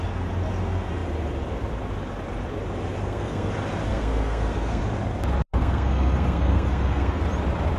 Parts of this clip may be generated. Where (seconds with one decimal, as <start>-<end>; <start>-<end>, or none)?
3.0-3.5; 3.9-4.8; 5.5-7.2